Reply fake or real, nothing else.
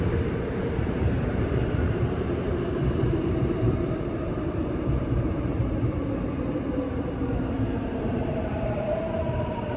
fake